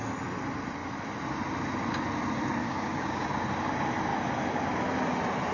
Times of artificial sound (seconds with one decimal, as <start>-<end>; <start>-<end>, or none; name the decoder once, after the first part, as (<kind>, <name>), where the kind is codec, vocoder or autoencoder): 2.6-3.3 (codec, DAC)